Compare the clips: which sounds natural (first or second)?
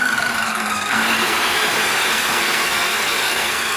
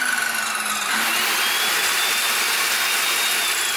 second